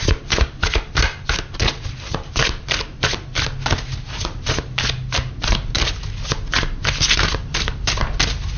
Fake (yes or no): no